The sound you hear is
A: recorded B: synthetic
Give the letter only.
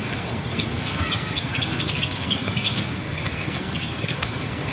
B